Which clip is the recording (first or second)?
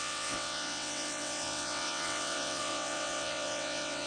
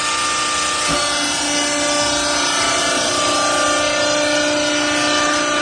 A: second